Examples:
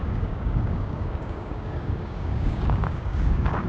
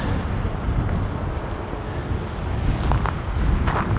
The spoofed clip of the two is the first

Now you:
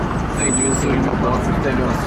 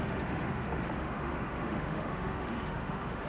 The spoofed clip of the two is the second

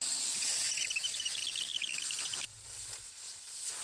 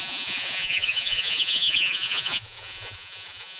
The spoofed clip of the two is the second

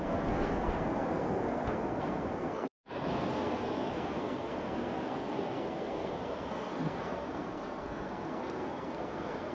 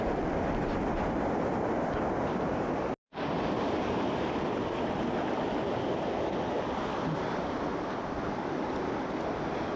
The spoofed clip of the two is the first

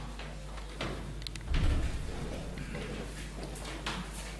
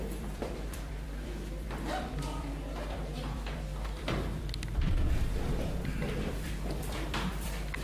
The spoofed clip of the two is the second